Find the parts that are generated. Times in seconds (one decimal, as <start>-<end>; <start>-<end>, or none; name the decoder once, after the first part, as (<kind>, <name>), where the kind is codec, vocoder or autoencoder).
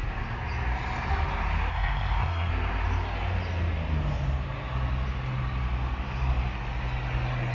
1.7-2.5 (codec, SNAC)